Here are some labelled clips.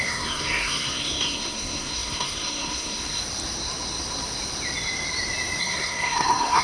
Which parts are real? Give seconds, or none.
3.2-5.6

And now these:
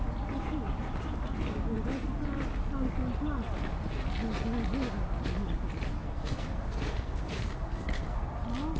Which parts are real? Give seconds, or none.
0.0-6.0; 8.3-8.8

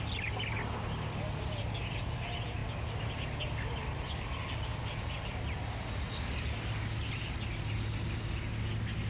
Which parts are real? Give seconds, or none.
0.0-9.1

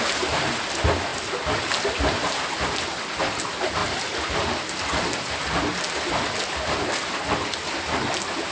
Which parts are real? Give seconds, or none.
0.0-3.8; 5.3-5.7; 6.5-8.5

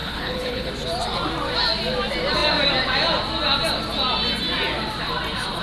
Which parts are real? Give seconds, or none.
0.7-5.6

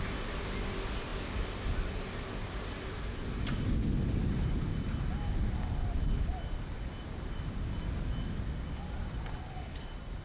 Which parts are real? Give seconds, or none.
0.0-10.2